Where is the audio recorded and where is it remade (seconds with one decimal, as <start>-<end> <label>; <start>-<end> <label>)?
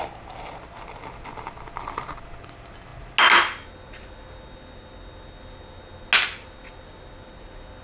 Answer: 0.0-7.8 recorded